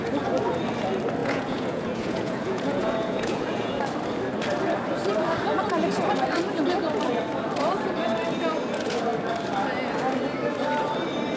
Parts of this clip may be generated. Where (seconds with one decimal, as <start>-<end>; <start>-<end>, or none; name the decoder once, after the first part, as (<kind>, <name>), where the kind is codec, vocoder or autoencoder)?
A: 1.2-3.8 (vocoder, Vocos)